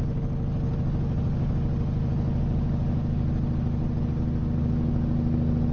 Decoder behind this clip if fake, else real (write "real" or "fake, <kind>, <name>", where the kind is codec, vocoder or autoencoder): real